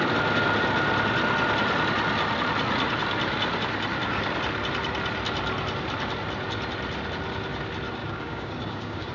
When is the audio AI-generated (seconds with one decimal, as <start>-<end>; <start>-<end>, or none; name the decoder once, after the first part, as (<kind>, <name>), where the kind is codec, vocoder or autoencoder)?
8.0-9.1 (codec, DAC)